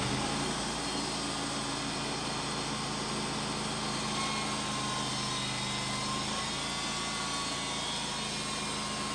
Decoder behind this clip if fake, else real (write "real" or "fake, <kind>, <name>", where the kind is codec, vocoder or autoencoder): real